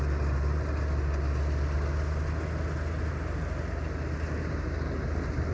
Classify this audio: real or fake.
real